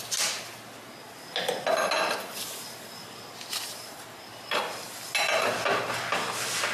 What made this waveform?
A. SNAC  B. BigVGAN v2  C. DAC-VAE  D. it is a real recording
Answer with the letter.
D